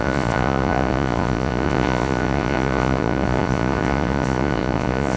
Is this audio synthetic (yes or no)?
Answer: yes